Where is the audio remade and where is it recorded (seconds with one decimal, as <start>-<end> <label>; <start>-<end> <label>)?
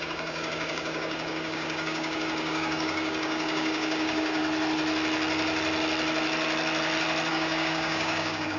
0.0-4.4 remade; 4.4-7.3 recorded; 7.3-8.6 remade